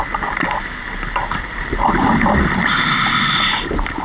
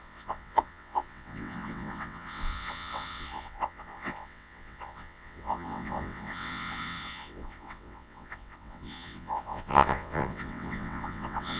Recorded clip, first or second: first